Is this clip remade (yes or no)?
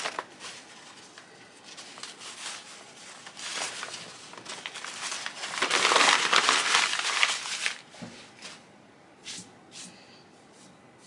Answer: no